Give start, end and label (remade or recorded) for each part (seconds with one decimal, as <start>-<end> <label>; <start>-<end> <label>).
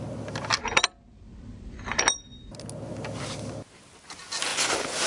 0.0-5.1 recorded